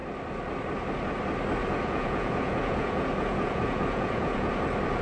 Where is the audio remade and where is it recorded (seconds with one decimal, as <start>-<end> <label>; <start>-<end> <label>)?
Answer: 0.0-1.6 recorded; 1.6-4.6 remade; 4.6-5.0 recorded